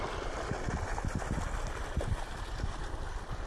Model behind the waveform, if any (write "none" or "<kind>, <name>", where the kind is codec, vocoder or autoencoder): none